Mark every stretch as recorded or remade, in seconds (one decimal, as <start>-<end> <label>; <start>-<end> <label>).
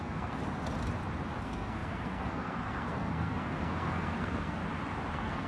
0.0-0.4 remade; 0.4-1.4 recorded; 1.4-4.6 remade; 4.6-5.1 recorded; 5.1-5.5 remade